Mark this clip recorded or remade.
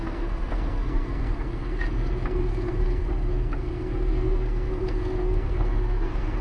remade